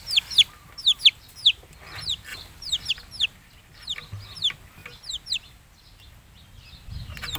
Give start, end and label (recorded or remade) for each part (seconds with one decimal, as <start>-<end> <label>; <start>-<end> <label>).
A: 0.0-2.3 recorded; 2.3-2.9 remade; 2.9-7.4 recorded